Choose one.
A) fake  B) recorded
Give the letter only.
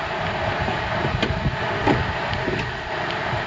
B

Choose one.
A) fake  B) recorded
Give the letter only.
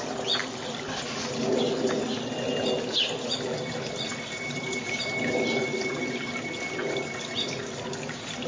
B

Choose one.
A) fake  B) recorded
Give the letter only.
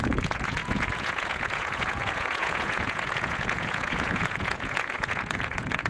A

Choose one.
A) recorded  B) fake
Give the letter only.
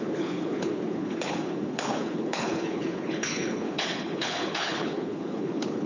B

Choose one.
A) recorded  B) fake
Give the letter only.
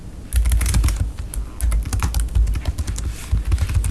A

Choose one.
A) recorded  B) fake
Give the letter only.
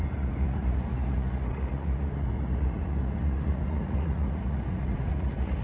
B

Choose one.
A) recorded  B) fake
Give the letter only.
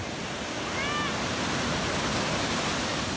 A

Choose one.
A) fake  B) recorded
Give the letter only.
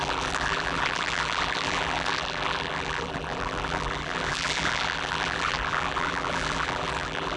A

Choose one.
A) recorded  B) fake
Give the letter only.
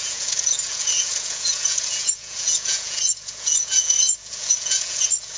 B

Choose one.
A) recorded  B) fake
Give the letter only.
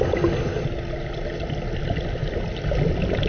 A